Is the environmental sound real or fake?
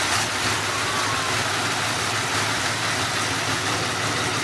real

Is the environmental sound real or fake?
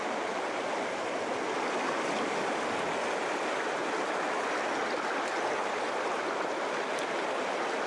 real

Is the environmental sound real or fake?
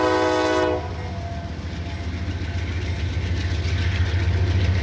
real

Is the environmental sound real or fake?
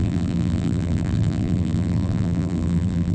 fake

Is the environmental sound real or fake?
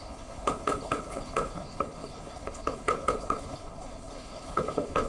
fake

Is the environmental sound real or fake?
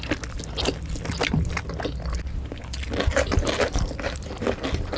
real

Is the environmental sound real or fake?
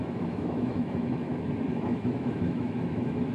fake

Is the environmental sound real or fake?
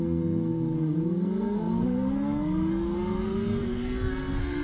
fake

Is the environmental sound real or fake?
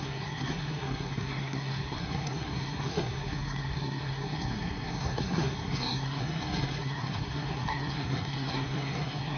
fake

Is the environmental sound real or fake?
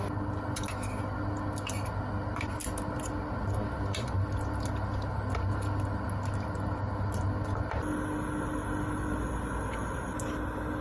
real